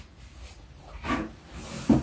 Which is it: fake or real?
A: real